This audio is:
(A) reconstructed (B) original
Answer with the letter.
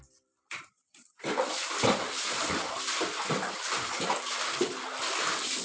A